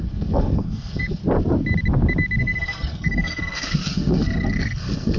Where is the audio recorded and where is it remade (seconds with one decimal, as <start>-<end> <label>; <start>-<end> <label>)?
0.0-1.2 remade; 1.2-2.4 recorded; 2.4-5.2 remade